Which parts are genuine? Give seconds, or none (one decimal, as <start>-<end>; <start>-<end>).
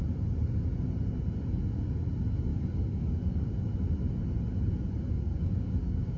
0.0-2.5; 3.5-5.1